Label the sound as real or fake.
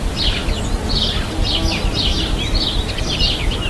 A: real